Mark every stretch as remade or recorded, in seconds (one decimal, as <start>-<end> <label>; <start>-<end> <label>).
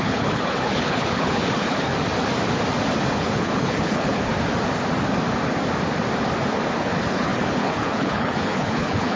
0.0-1.9 remade; 1.9-3.1 recorded; 3.1-4.3 remade; 4.3-6.8 recorded; 6.8-9.2 remade